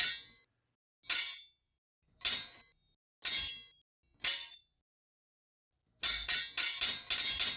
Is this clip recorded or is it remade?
recorded